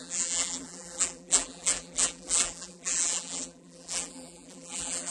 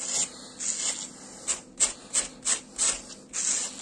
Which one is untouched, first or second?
second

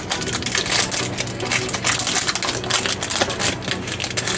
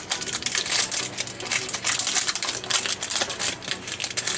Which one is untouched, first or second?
first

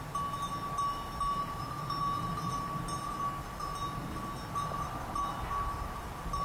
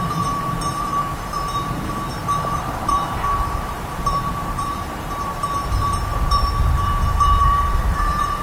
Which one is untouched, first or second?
first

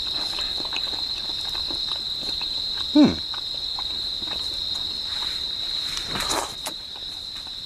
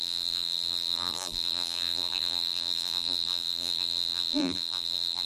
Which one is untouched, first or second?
first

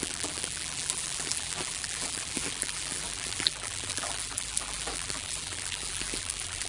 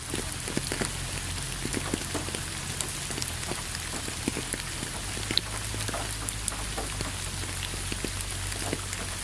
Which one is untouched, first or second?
second